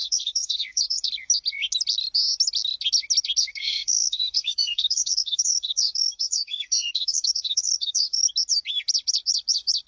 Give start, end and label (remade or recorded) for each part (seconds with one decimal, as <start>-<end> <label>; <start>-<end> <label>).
0.0-1.1 remade; 1.1-3.4 recorded; 3.4-8.2 remade; 8.2-9.9 recorded